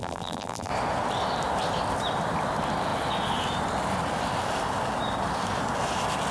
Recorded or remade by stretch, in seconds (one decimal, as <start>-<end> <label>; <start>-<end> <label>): 0.0-0.7 remade; 0.7-6.3 recorded